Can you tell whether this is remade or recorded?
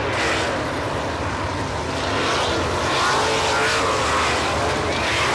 recorded